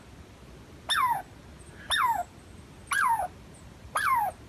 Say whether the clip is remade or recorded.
recorded